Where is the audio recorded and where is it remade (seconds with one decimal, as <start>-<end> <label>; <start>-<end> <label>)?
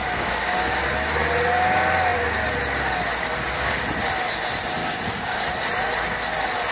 0.0-0.8 remade; 0.8-4.8 recorded; 4.8-5.4 remade; 5.4-6.7 recorded